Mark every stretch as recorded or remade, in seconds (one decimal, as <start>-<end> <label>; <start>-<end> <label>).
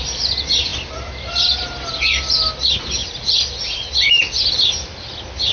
0.0-5.5 recorded